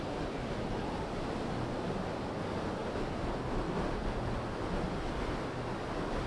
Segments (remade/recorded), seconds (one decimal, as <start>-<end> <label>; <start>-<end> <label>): 0.0-6.3 recorded